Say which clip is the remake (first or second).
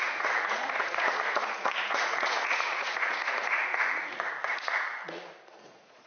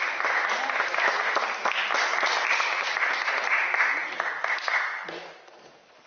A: first